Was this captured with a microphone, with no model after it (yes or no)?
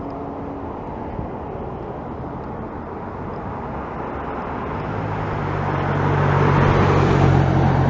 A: yes